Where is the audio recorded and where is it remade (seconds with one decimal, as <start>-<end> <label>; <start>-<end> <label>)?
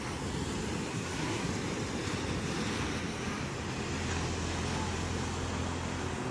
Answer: 0.0-0.9 recorded; 0.9-1.5 remade; 1.5-6.3 recorded